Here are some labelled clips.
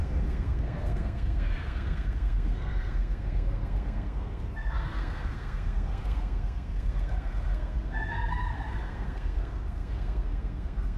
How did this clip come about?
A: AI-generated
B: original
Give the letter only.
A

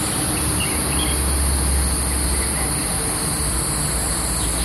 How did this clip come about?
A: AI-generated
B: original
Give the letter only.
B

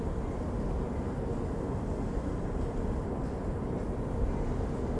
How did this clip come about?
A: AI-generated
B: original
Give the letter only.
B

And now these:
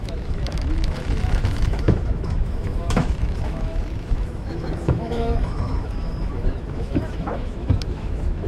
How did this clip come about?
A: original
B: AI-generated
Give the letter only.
B